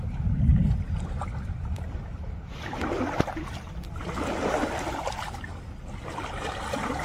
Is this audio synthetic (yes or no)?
yes